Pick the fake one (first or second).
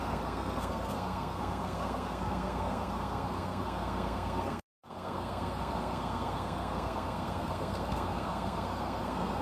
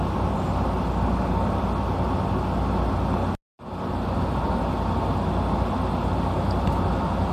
first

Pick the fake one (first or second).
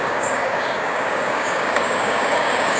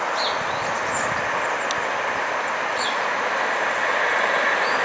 first